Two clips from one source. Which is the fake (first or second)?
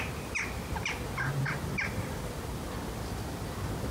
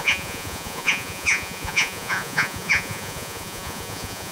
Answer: second